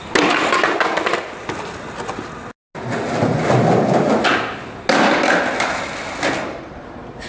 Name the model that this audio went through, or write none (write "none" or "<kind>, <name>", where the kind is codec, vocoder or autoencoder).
none